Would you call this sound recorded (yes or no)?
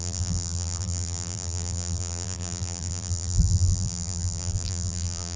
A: no